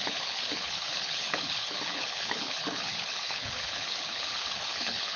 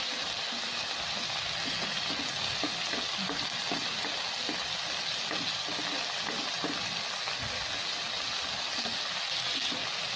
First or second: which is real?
second